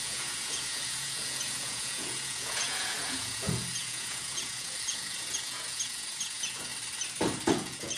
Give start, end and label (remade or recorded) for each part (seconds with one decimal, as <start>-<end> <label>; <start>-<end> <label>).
0.0-6.7 remade; 6.7-7.5 recorded; 7.5-8.0 remade